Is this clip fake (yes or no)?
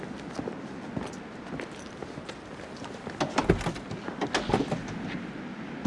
no